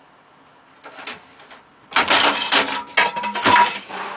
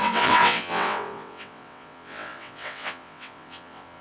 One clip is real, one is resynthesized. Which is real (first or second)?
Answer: first